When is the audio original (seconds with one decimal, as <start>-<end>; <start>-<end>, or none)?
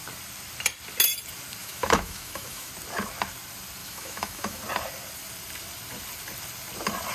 0.0-1.6; 2.7-3.8; 4.6-7.1